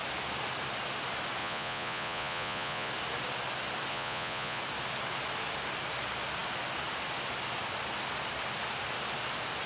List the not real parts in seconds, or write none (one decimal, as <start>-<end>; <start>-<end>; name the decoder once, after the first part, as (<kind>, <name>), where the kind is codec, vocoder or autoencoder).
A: 1.4-2.9 (vocoder, Vocos); 3.9-4.6